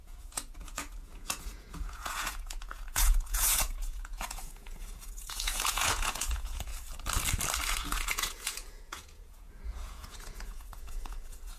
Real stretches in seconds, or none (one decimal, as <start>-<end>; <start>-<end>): 6.7-7.8